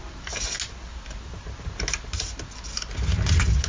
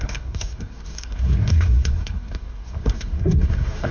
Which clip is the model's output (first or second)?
second